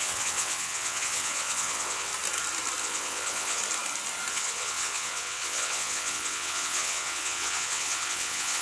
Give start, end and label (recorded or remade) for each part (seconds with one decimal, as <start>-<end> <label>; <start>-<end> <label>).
0.0-2.1 remade; 2.1-2.8 recorded; 2.8-3.6 remade; 3.6-4.3 recorded; 4.3-8.6 remade